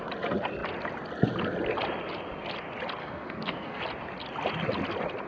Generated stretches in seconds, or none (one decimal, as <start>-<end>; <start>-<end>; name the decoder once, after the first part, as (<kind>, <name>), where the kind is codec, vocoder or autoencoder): 3.0-3.8 (codec, SNAC)